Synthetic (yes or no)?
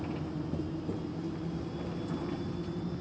no